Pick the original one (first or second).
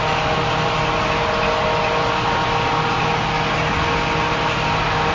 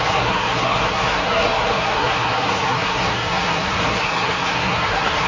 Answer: first